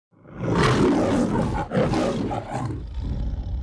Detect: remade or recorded recorded